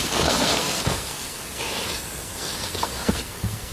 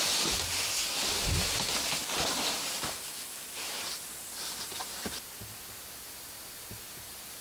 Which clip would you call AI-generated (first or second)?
first